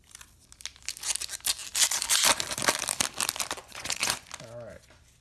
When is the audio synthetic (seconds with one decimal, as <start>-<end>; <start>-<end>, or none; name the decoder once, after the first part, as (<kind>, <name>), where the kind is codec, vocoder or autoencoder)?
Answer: 3.6-4.3 (vocoder, Vocos)